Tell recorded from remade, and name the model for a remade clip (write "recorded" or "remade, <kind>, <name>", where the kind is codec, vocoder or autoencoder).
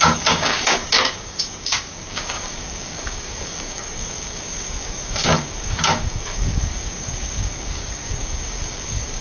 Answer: remade, codec, DAC